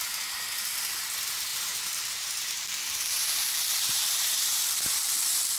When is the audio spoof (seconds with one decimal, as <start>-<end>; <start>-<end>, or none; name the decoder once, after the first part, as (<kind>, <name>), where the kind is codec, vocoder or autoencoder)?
1.5-4.9 (vocoder, BigVGAN v2)